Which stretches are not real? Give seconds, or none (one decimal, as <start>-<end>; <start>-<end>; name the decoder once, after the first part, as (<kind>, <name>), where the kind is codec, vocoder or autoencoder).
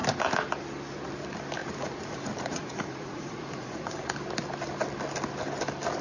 1.6-4.1 (vocoder, Vocos)